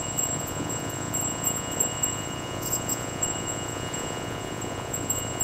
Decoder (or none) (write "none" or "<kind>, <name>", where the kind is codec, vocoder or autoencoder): vocoder, Vocos